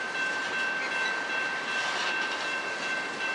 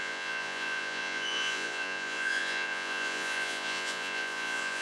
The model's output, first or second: second